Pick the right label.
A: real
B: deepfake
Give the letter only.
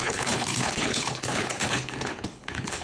B